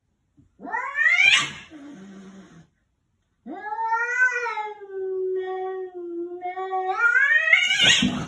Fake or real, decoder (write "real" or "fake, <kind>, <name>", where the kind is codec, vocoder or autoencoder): real